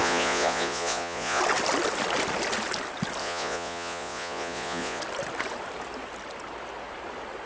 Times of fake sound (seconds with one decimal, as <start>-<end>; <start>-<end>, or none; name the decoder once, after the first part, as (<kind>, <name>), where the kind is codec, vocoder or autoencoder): 0.0-1.4 (vocoder, Vocos); 3.2-5.0